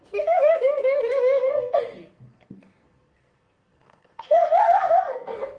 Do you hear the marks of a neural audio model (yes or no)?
yes